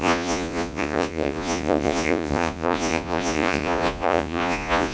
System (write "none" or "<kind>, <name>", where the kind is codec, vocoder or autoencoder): vocoder, Vocos